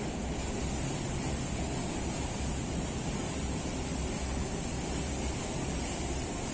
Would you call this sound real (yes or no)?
yes